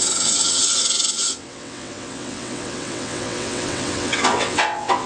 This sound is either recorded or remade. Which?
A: remade